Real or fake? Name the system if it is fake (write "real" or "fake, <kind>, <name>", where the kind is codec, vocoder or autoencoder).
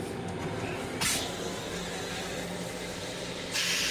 real